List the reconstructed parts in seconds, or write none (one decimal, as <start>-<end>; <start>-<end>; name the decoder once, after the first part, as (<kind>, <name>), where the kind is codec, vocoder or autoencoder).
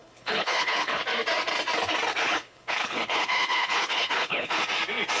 0.0-1.0 (codec, HILCodec); 2.1-4.6